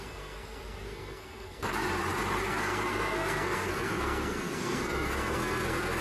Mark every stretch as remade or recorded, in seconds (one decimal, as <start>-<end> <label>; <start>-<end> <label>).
0.0-1.8 remade; 1.8-2.4 recorded; 2.4-6.0 remade